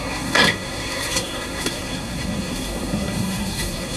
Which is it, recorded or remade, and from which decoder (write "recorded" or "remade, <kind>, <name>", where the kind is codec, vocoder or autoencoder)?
remade, codec, SNAC